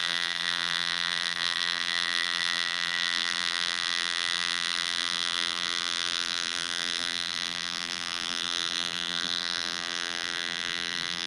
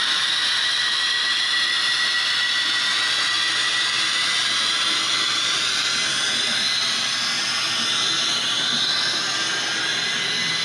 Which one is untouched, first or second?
second